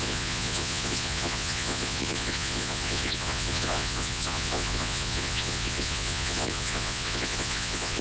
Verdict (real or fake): fake